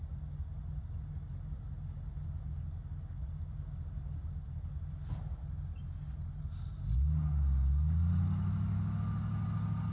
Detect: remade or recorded recorded